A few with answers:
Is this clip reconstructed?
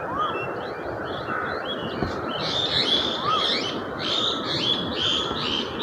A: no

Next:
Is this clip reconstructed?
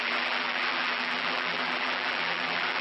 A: yes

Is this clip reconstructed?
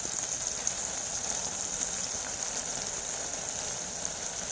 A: no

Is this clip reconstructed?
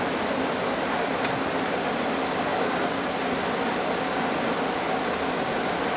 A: yes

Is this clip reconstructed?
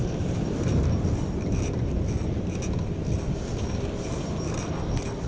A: no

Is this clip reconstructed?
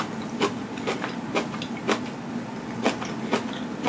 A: no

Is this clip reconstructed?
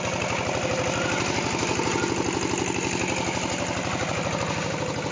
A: yes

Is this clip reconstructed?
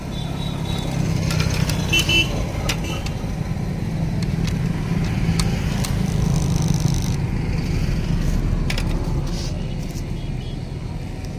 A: no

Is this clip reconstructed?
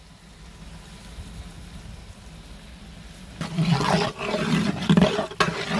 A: no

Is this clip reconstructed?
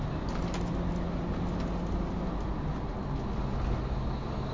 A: no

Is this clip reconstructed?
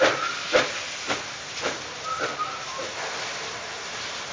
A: no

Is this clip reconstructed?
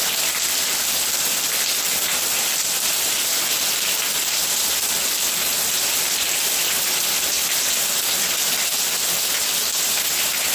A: no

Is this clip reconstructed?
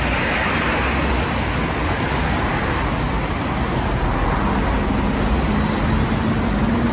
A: no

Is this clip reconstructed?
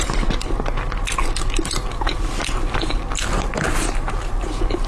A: no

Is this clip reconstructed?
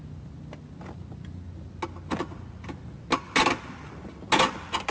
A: no